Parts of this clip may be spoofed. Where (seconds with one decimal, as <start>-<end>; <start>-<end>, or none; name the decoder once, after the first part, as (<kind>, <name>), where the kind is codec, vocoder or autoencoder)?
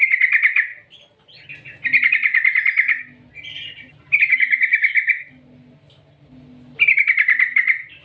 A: 4.3-5.3 (autoencoder, DAC-VAE)